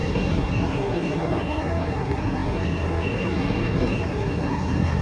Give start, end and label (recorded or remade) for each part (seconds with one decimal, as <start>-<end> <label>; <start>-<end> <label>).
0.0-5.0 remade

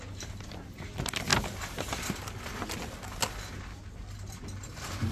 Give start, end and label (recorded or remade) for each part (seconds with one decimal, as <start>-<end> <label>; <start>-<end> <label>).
0.0-5.1 recorded

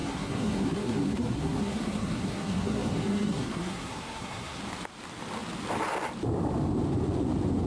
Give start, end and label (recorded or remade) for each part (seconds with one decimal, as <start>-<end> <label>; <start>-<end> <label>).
0.0-4.6 remade; 4.6-7.7 recorded

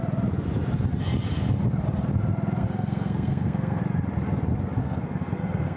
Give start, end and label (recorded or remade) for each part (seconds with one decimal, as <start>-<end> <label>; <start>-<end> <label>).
0.0-2.6 recorded; 2.6-3.8 remade; 3.8-4.8 recorded; 4.8-5.8 remade

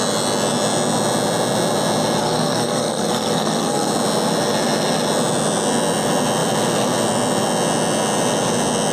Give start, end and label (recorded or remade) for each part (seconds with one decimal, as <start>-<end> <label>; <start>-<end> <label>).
0.0-2.2 recorded; 2.2-3.9 remade; 3.9-8.9 recorded